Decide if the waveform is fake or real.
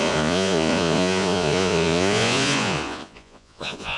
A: fake